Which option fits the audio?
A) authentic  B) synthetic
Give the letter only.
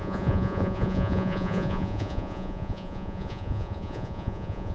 B